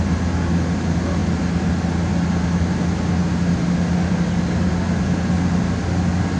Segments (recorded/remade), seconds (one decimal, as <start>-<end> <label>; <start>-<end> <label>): 0.0-6.4 recorded